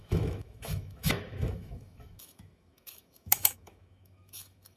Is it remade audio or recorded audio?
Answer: remade